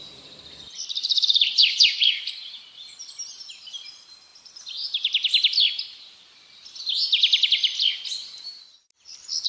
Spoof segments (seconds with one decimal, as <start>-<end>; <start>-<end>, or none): 1.0-2.7